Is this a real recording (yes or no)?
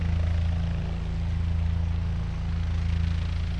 yes